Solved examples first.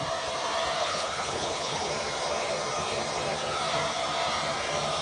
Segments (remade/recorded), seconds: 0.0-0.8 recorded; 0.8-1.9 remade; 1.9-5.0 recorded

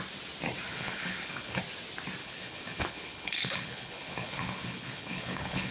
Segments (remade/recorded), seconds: 0.0-0.7 recorded; 0.7-1.6 remade; 1.6-2.2 recorded; 2.2-5.7 remade

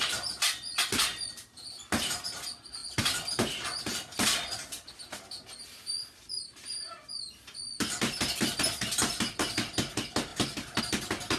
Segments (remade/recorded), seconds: 0.0-11.4 recorded

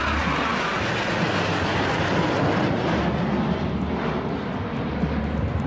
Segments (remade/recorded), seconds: 0.0-5.7 recorded

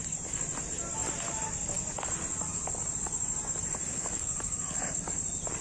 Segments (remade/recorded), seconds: 0.0-3.9 recorded; 3.9-5.0 remade; 5.0-5.6 recorded

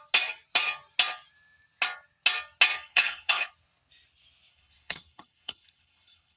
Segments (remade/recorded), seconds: 0.0-2.9 recorded; 2.9-3.5 remade; 3.5-4.5 recorded; 4.5-6.4 remade

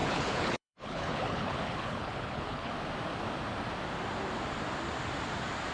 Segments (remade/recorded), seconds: 0.0-2.7 remade; 2.7-5.7 recorded

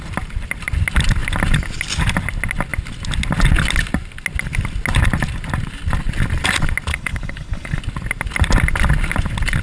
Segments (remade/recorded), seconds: 0.0-6.9 recorded; 6.9-7.8 remade; 7.8-9.6 recorded